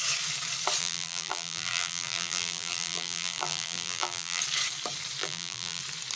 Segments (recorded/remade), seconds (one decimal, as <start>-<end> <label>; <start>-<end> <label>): 0.0-0.8 recorded; 0.8-4.4 remade; 4.4-5.2 recorded; 5.2-5.8 remade; 5.8-6.2 recorded